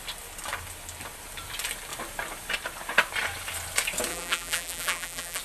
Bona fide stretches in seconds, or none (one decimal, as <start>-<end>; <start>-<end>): 0.0-4.1